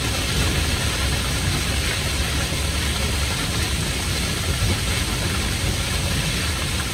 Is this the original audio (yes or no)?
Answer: yes